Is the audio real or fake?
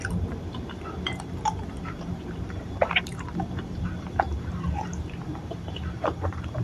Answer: fake